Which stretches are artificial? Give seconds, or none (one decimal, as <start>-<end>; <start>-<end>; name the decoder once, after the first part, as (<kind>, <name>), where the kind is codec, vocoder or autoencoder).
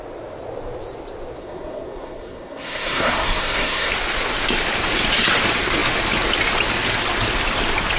1.4-3.9 (codec, SNAC)